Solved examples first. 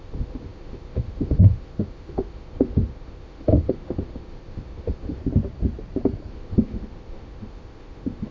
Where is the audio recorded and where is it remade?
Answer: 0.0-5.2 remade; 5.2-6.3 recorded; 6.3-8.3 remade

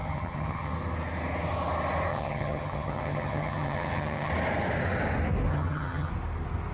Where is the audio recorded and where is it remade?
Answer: 0.0-0.7 remade; 0.7-2.1 recorded; 2.1-4.3 remade; 4.3-5.5 recorded; 5.5-6.1 remade; 6.1-6.7 recorded

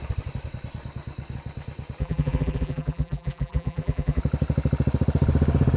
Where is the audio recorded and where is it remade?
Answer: 0.0-2.0 recorded; 2.0-4.2 remade; 4.2-5.8 recorded